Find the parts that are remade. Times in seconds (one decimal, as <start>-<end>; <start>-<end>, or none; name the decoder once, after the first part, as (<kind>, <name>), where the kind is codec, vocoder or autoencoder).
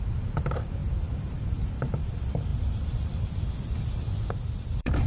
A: 0.0-5.1 (vocoder, BigVGAN v2)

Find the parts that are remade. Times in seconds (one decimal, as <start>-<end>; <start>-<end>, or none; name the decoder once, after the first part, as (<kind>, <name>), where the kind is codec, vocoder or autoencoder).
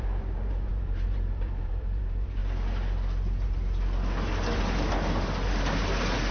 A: 0.0-2.4 (vocoder, BigVGAN v2)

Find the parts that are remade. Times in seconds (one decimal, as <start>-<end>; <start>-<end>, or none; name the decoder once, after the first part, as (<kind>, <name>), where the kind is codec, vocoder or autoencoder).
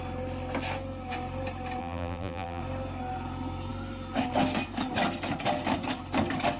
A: 1.8-2.6 (vocoder, BigVGAN v2)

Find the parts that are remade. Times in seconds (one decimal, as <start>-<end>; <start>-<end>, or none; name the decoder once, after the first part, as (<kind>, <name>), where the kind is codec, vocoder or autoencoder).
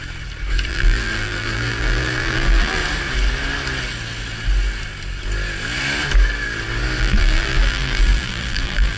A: 0.7-2.8 (vocoder, BigVGAN v2); 7.0-9.0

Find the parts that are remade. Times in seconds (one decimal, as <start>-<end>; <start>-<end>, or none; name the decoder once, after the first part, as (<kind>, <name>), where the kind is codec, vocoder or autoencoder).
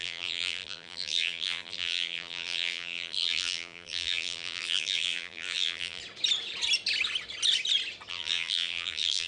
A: 0.0-6.0 (vocoder, BigVGAN v2); 8.1-9.3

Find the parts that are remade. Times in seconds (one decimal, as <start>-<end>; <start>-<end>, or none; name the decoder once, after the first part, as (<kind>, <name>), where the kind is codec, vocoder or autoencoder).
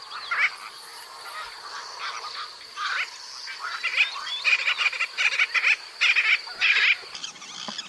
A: none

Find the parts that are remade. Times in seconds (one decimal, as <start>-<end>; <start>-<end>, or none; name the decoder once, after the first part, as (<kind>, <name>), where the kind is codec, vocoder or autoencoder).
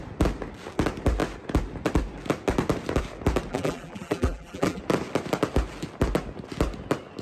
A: 3.5-4.8 (vocoder, BigVGAN v2)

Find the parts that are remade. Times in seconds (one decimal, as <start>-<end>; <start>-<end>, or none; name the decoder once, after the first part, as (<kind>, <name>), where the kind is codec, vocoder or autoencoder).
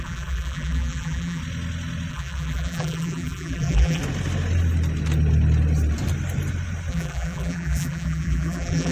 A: 0.0-1.4 (vocoder, BigVGAN v2); 2.1-4.0; 6.9-8.9